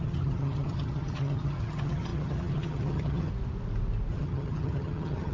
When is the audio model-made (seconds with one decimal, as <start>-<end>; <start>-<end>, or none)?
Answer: 0.0-3.3; 4.1-5.3